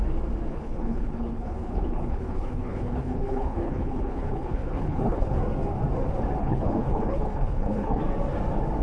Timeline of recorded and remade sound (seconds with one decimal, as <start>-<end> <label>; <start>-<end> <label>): 0.0-0.5 recorded; 0.5-5.4 remade; 5.4-6.4 recorded; 6.4-8.0 remade; 8.0-8.8 recorded